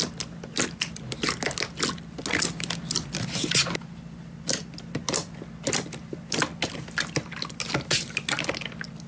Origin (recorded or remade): recorded